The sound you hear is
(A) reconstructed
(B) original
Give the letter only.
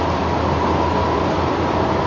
B